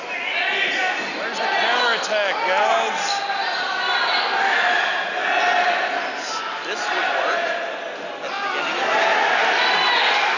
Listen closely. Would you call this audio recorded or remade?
recorded